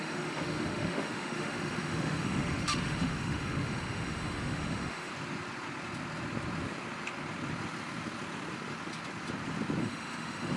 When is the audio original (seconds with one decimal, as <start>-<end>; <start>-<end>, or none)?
5.1-9.8